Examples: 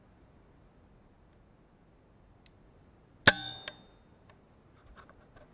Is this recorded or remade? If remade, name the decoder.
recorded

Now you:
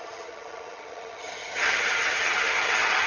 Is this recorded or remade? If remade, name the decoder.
remade, vocoder, HiFi-GAN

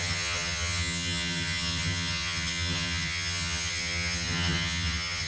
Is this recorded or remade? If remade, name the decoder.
remade, vocoder, HiFi-GAN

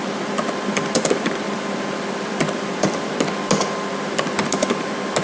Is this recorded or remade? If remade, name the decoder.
recorded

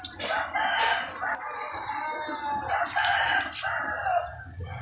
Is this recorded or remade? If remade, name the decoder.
recorded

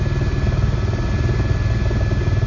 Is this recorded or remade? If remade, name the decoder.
recorded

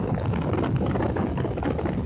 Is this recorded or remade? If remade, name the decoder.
recorded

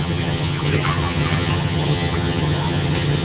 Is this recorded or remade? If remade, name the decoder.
remade, vocoder, HiFi-GAN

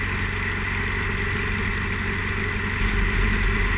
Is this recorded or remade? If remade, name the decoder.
recorded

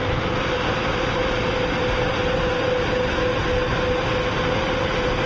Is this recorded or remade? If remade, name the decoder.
recorded